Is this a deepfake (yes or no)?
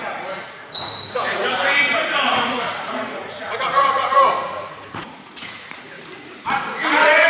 yes